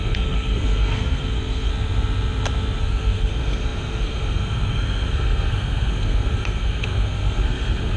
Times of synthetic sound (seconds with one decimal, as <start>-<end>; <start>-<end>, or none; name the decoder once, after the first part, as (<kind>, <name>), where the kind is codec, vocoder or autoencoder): 0.0-1.7 (codec, SNAC); 2.8-8.0